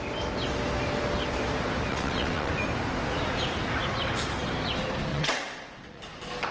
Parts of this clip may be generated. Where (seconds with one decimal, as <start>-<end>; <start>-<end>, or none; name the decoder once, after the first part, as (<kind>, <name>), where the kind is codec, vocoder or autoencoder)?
1.9-2.5 (vocoder, WaveNeXt); 5.1-6.0